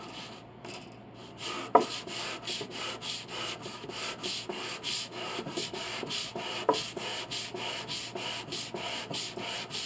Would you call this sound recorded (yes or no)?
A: yes